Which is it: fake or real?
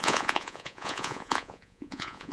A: fake